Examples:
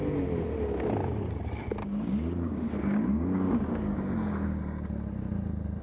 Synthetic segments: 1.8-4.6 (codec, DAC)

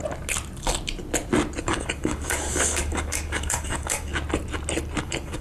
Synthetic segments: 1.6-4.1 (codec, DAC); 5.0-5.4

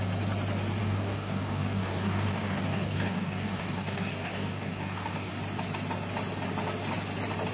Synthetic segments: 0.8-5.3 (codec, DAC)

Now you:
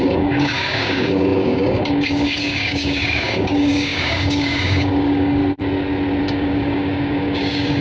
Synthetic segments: 0.0-5.4 (codec, DAC); 6.2-7.8

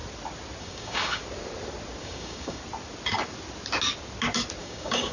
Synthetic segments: 0.6-1.2 (codec, DAC); 2.0-2.6; 4.6-5.1